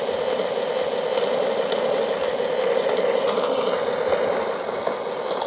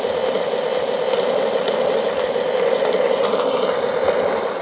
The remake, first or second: second